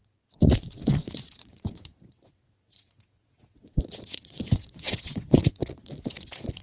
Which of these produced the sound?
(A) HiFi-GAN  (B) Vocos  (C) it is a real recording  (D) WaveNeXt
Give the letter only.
D